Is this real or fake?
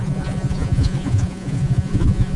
fake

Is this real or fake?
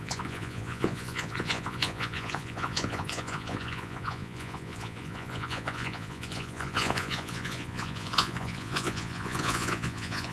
fake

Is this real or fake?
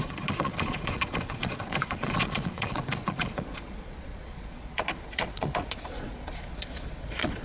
fake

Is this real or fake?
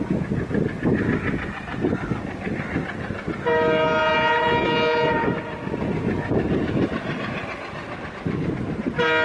real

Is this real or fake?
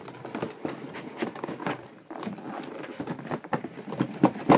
real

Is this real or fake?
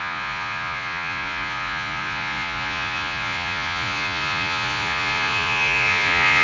fake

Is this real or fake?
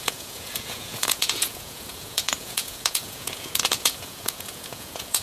fake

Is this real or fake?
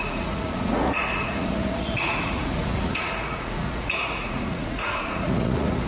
fake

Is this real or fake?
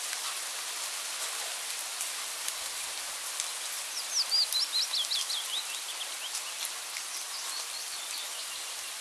real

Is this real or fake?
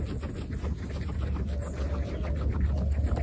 real